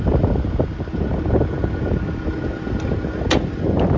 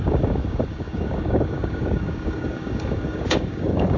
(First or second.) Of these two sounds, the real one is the first